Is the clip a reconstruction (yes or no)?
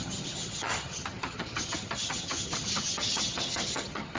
yes